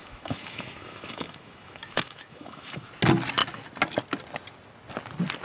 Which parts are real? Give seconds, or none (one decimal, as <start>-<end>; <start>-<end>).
2.9-5.4

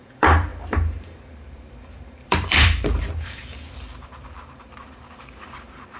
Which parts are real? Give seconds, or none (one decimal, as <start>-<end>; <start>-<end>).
none